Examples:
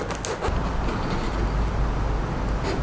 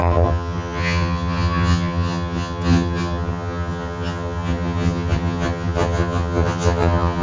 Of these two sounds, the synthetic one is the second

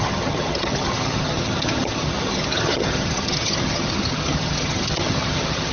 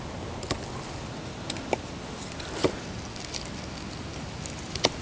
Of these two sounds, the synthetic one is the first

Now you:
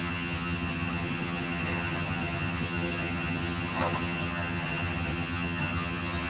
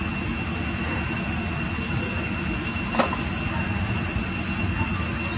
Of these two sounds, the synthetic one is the first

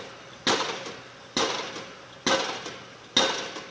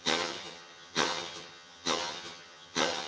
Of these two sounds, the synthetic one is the second